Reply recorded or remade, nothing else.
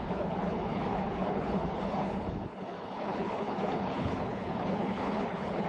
remade